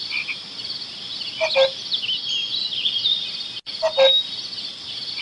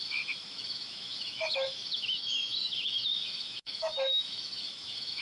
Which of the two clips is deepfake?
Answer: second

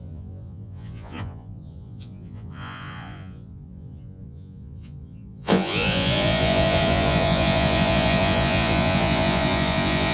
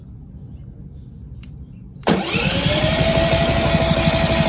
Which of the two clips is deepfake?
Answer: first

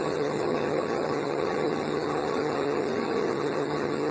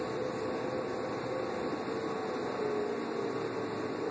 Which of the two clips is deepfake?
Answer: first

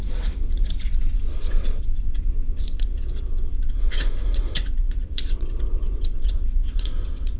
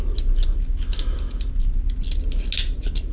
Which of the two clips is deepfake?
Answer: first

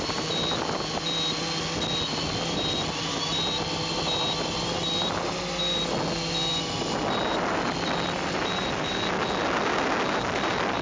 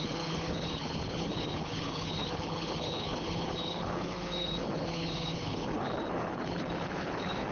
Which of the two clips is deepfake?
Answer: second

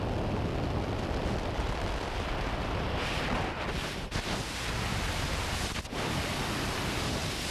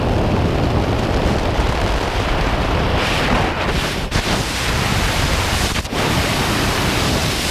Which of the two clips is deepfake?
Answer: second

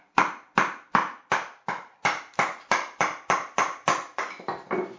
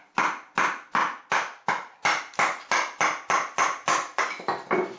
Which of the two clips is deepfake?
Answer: first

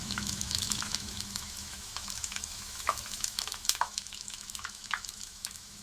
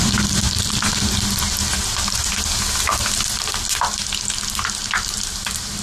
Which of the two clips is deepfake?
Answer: first